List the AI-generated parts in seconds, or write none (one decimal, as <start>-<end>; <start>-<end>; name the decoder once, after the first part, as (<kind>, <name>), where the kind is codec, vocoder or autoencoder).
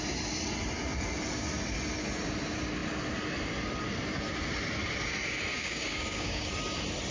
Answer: 5.5-6.5 (codec, DAC)